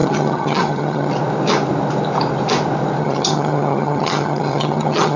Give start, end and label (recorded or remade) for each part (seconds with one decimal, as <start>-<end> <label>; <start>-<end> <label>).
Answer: 0.0-1.1 remade; 1.1-3.0 recorded; 3.0-5.2 remade